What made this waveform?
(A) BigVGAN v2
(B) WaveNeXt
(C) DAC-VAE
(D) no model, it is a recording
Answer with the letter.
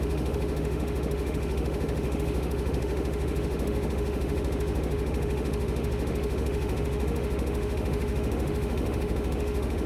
C